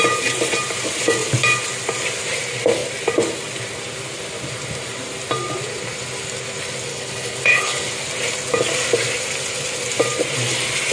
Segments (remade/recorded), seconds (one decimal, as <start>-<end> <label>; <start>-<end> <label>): 0.0-6.9 recorded; 6.9-7.9 remade; 7.9-10.9 recorded